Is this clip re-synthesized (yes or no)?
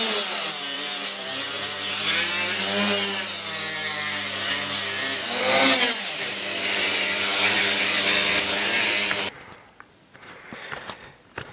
yes